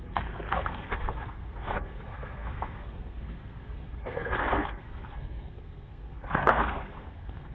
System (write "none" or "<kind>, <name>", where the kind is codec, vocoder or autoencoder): codec, SNAC